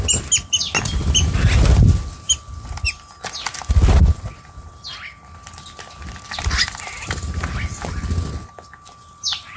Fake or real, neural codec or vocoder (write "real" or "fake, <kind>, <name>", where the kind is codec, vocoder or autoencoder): real